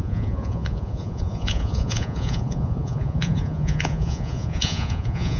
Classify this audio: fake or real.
fake